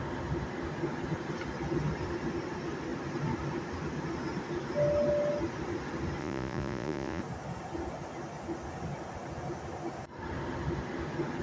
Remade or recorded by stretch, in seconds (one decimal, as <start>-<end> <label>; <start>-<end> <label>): 0.0-6.2 recorded; 6.2-7.2 remade; 7.2-11.4 recorded

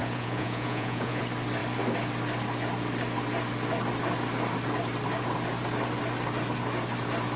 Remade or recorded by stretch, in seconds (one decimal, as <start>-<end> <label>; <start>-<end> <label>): 0.0-1.2 remade; 1.2-7.4 recorded

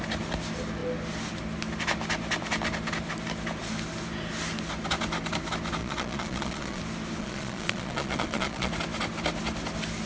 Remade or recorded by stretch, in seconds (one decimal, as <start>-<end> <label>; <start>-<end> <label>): 0.0-5.8 recorded; 5.8-6.8 remade; 6.8-7.2 recorded; 7.2-8.7 remade; 8.7-10.1 recorded

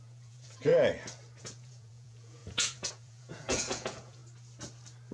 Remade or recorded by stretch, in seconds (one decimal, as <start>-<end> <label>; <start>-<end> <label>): 0.0-0.7 remade; 0.7-1.4 recorded; 1.4-4.2 remade; 4.2-5.1 recorded

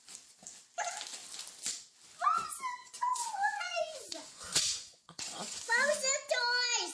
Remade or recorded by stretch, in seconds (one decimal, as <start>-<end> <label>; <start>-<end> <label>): 0.0-2.8 recorded; 2.8-6.0 remade; 6.0-6.9 recorded